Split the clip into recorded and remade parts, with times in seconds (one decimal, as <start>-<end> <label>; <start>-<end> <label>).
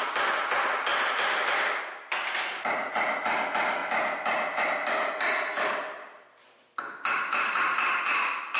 0.0-8.6 recorded